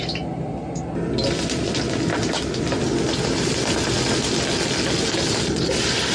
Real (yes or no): yes